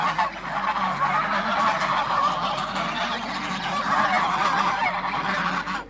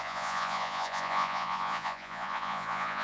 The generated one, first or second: second